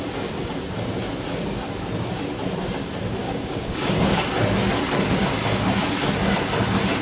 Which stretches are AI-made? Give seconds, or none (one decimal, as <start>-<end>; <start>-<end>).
3.2-4.3